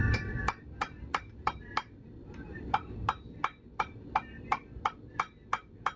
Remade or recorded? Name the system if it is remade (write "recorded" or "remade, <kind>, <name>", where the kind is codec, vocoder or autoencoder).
remade, vocoder, BigVGAN v2